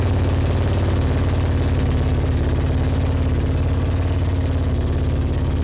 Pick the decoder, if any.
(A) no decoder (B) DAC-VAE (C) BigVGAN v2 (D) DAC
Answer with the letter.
A